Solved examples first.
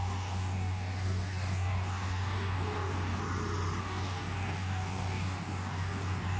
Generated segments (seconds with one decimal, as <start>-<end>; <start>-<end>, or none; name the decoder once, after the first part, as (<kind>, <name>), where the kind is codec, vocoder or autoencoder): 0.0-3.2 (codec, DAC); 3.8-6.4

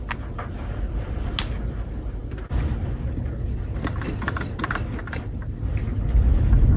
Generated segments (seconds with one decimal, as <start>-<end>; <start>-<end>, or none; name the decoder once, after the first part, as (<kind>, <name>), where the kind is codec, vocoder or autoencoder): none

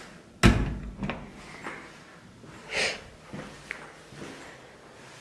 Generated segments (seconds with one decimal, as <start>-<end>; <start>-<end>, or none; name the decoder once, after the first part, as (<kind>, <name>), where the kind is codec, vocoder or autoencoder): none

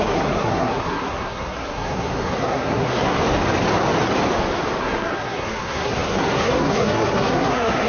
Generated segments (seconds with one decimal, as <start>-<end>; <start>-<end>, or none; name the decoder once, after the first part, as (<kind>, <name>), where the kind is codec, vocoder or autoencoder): 0.0-3.2 (codec, SNAC); 4.8-7.9

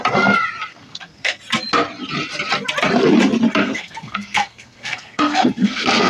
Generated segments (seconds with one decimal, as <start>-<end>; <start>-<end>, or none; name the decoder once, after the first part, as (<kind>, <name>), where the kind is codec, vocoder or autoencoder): 0.7-1.4 (codec, SNAC); 3.6-6.1

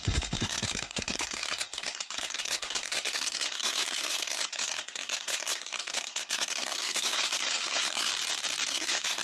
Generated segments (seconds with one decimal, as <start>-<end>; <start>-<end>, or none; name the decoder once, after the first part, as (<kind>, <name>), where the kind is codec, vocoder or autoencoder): 0.0-8.1 (codec, SNAC); 8.7-9.2

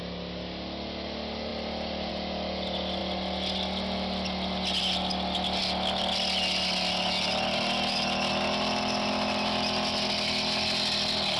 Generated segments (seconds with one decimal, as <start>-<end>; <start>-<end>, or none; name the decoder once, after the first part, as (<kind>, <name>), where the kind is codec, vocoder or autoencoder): none

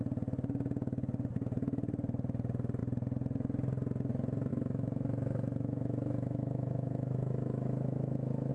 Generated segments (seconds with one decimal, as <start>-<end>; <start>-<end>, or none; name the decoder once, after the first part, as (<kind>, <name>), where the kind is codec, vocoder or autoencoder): 4.5-8.5 (autoencoder, DAC-VAE)